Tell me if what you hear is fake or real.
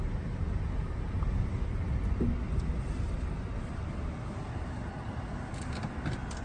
real